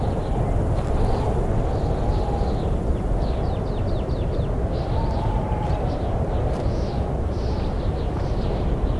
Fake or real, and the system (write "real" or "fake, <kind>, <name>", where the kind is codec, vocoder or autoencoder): real